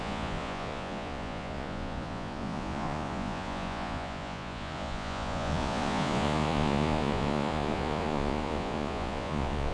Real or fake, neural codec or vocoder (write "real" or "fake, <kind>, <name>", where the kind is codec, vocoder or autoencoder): fake, vocoder, Vocos